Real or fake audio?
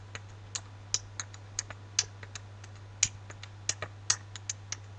real